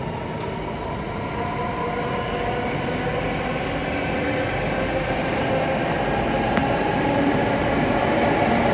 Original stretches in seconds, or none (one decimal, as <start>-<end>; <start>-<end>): 0.0-8.7